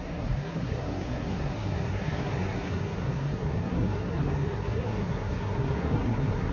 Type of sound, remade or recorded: remade